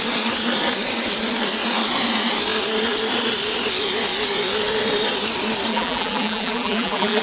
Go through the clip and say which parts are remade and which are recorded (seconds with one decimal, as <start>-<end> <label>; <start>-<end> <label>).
0.0-5.7 recorded; 5.7-7.2 remade